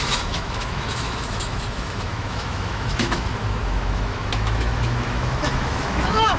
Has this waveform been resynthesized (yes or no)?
yes